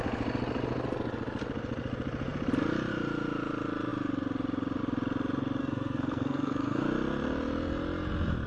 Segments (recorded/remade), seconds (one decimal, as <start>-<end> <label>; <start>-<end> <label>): 0.0-5.6 recorded; 5.6-6.8 remade; 6.8-8.5 recorded